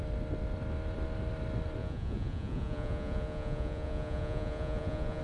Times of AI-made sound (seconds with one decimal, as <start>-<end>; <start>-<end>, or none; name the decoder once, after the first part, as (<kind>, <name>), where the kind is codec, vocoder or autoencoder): 1.8-5.2 (vocoder, Vocos)

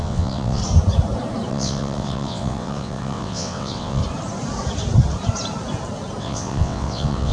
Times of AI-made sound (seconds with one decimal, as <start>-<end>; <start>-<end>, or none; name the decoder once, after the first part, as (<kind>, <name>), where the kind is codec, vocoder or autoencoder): 0.0-0.6 (vocoder, WaveNeXt); 1.5-4.0; 6.2-7.3

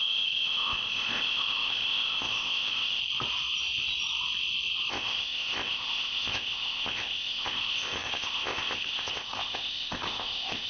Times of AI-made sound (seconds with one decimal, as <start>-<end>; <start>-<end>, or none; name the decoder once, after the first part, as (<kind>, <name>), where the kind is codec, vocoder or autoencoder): 0.0-3.0 (codec, ZipCodec); 4.9-10.7

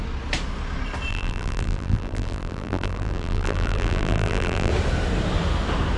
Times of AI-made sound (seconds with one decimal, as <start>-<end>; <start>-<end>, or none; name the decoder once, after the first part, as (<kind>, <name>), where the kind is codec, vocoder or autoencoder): 1.1-4.7 (vocoder, BigVGAN v2)